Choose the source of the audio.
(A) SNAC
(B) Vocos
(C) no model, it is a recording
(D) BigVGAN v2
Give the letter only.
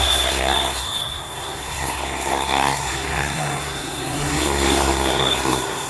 A